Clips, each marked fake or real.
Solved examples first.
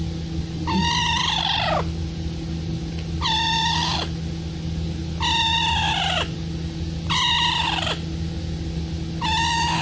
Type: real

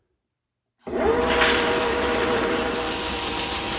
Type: fake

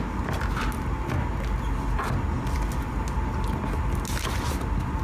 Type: real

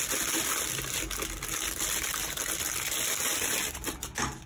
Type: real